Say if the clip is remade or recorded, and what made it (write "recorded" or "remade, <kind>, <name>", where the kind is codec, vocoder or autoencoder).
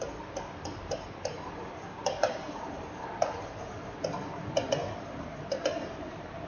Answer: remade, vocoder, BigVGAN v2